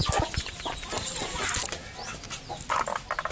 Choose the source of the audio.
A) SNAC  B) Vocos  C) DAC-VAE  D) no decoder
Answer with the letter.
D